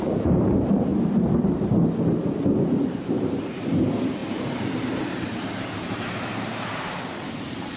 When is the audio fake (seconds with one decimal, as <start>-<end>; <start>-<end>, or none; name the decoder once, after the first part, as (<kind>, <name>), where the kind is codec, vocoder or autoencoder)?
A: 0.0-0.9 (vocoder, BigVGAN v2); 3.2-7.8